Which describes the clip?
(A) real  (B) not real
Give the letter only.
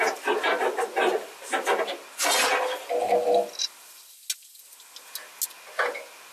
A